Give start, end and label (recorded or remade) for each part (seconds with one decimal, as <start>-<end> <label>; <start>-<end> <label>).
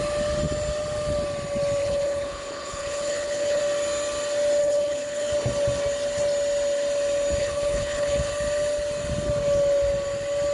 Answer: 0.0-1.8 recorded; 1.8-3.6 remade; 3.6-4.6 recorded; 4.6-5.3 remade; 5.3-7.4 recorded; 7.4-8.3 remade; 8.3-10.5 recorded